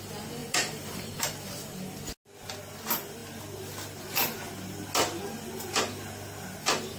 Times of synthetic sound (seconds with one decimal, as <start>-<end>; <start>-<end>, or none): 0.4-1.6